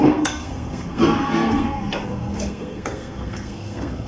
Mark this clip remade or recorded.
remade